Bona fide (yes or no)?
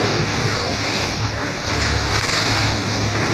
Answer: no